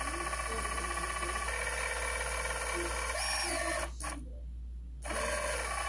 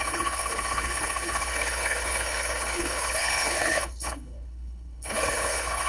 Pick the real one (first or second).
first